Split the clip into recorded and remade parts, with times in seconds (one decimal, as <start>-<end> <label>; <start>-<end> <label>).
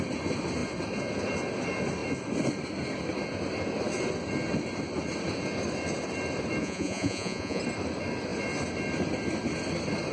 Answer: 0.0-6.6 recorded; 6.6-7.6 remade; 7.6-10.1 recorded